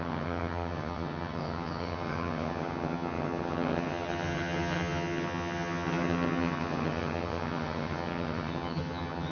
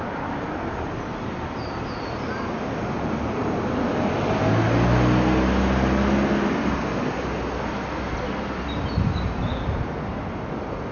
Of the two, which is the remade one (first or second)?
first